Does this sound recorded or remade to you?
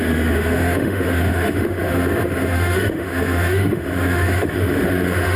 remade